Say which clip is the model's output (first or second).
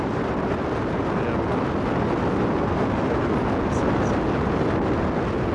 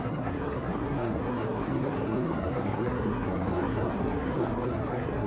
second